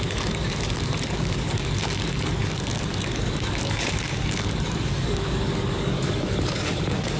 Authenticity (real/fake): fake